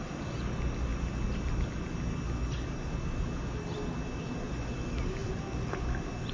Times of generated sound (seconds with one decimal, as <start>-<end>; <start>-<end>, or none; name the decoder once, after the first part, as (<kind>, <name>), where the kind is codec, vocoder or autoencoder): none